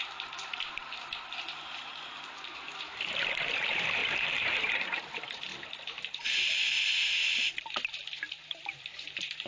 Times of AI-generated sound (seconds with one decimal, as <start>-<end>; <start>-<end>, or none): 0.0-5.5; 6.2-7.2; 7.9-9.5